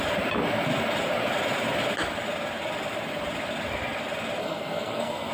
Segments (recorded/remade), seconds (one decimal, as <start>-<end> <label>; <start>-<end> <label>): 0.0-4.4 recorded; 4.4-5.3 remade